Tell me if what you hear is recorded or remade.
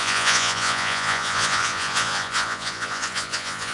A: remade